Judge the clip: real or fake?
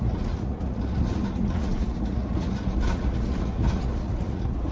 fake